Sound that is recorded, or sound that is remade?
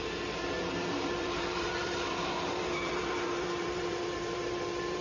remade